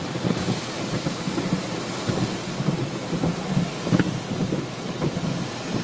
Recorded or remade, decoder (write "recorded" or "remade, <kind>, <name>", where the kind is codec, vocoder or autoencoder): recorded